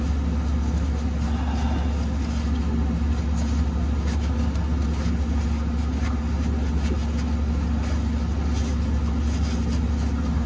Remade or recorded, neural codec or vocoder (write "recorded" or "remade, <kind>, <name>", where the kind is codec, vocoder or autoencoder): recorded